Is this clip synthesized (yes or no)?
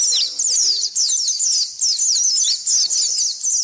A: no